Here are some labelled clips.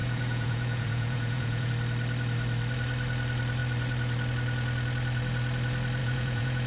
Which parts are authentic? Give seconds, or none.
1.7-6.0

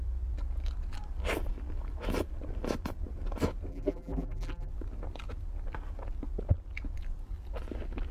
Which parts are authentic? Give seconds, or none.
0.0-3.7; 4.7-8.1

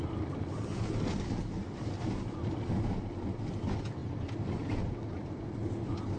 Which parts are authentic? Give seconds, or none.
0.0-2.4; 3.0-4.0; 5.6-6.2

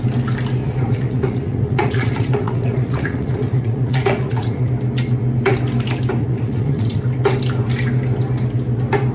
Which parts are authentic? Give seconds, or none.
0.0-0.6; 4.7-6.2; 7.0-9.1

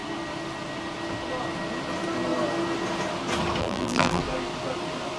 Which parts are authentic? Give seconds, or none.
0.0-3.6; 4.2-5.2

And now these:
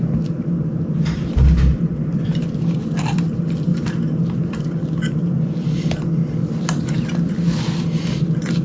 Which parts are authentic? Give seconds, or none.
3.7-5.1; 6.2-6.8

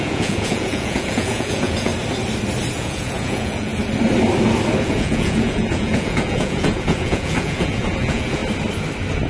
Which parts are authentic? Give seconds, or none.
1.9-2.7; 3.7-4.8; 8.4-9.3

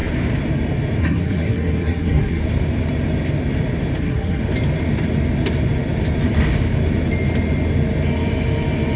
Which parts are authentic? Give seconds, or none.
0.0-1.0; 2.4-4.0; 4.4-9.0